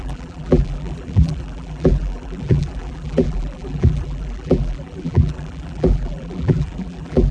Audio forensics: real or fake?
fake